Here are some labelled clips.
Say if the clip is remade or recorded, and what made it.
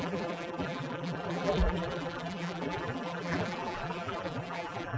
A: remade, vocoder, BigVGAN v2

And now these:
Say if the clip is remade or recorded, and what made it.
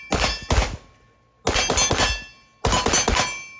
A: recorded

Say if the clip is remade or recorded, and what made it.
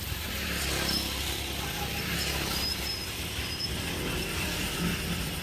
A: recorded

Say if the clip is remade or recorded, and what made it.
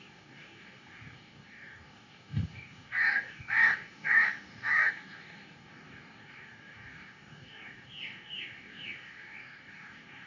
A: remade, codec, DAC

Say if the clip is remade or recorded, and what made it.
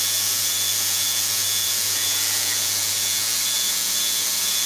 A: remade, vocoder, Vocos